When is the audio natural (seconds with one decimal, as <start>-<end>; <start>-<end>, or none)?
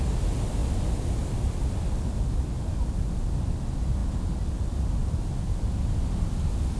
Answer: 0.0-6.8